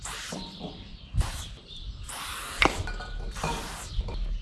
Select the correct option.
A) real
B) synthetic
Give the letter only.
A